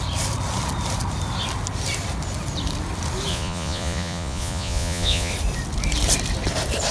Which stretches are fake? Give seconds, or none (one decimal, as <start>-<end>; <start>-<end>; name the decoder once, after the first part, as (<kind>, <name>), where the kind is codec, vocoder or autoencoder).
3.3-5.3 (vocoder, Vocos)